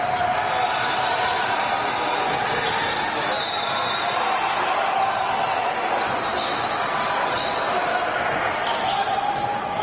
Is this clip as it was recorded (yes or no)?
yes